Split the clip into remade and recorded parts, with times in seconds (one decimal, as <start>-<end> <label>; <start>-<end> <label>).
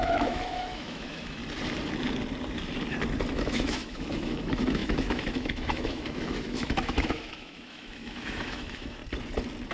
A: 0.0-1.4 remade; 1.4-3.3 recorded; 3.3-9.0 remade; 9.0-9.7 recorded